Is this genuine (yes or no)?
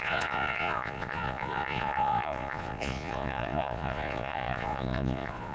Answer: no